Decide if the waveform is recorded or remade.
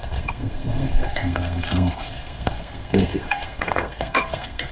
remade